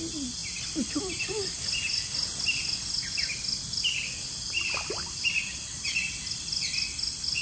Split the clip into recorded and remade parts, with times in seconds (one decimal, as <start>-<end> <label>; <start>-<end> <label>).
0.0-7.4 recorded